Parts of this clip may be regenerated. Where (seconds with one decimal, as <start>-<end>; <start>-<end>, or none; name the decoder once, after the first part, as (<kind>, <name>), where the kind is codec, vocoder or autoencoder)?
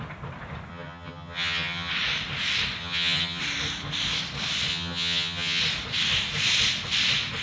0.7-1.9 (vocoder, HiFi-GAN); 2.8-3.4; 4.7-5.6